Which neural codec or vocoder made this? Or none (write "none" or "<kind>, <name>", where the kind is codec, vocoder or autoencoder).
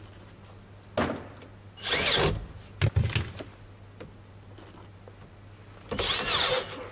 none